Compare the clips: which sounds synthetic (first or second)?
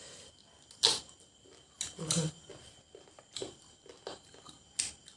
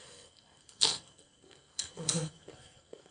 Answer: second